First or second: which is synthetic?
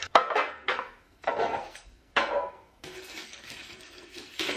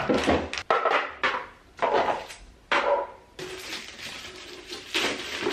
first